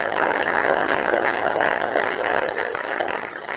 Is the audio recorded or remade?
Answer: remade